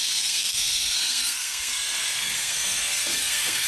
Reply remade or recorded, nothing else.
remade